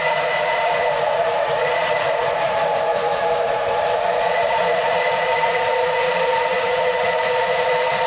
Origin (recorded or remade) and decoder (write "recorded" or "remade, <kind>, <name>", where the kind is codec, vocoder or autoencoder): remade, vocoder, Vocos